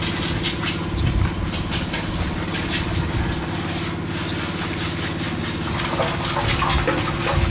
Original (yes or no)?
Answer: yes